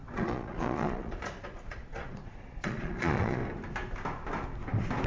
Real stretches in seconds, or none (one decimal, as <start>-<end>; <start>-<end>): 3.4-5.1